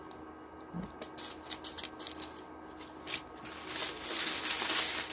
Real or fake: real